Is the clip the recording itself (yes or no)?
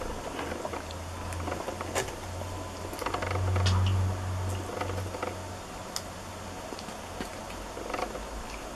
yes